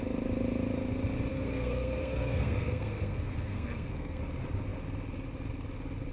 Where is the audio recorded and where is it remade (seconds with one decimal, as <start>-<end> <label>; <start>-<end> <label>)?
0.0-1.3 recorded; 1.3-4.2 remade; 4.2-6.1 recorded